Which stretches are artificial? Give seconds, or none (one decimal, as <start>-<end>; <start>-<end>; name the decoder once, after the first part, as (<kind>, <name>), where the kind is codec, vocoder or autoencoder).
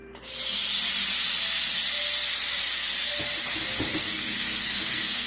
4.0-5.3 (codec, SNAC)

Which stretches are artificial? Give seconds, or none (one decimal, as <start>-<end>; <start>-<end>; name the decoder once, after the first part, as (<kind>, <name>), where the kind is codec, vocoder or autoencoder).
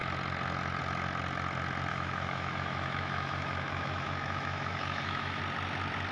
1.9-5.4 (autoencoder, DAC-VAE)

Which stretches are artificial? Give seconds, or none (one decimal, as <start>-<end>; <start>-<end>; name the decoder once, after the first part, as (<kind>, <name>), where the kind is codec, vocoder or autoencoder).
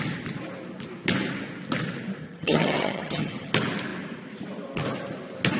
2.2-3.5 (vocoder, HiFi-GAN)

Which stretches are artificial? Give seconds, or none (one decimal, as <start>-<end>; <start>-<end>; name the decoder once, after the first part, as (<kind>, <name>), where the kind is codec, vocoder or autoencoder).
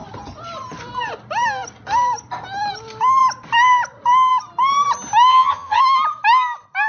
5.3-5.8 (vocoder, HiFi-GAN)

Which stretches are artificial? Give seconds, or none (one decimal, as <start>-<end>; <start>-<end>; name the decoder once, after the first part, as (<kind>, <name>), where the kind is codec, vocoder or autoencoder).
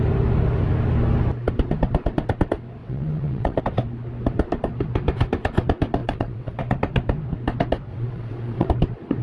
2.8-3.6 (vocoder, WaveNeXt); 6.0-6.6; 7.9-8.7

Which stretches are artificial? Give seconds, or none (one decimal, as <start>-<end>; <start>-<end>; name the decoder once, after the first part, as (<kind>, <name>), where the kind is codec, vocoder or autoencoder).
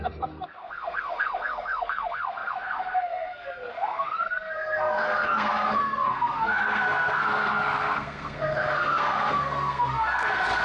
0.0-10.6 (codec, SNAC)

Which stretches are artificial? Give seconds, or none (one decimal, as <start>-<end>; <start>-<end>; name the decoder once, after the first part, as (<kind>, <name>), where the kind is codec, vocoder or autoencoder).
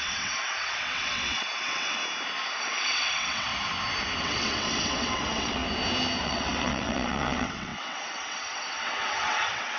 0.0-2.0 (vocoder, WaveNeXt); 2.6-3.5; 4.2-5.6; 6.2-9.8